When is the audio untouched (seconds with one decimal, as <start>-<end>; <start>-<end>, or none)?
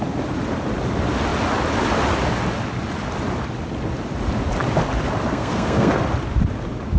0.0-5.3; 6.0-7.0